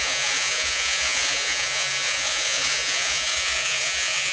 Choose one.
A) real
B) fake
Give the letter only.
B